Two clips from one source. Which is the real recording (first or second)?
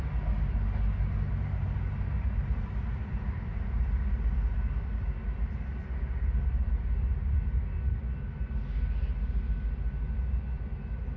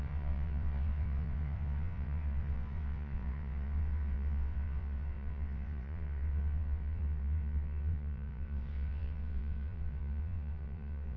first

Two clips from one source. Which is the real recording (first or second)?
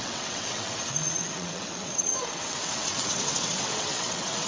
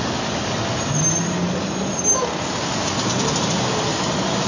second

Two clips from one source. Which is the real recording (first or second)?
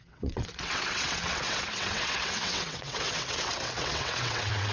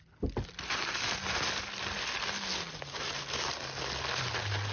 second